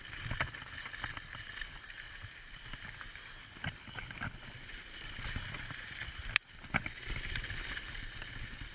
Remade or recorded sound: recorded